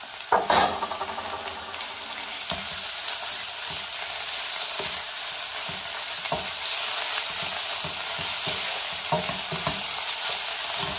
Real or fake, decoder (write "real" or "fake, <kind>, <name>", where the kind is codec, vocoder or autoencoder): real